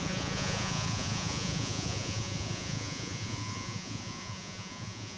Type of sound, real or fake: fake